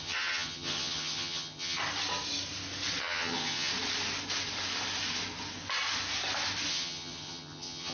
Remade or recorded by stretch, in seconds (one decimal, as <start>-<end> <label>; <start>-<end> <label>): 0.0-1.8 remade; 1.8-3.0 recorded; 3.0-3.7 remade; 3.7-6.7 recorded; 6.7-7.9 remade